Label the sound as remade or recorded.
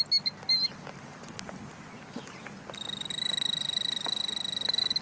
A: recorded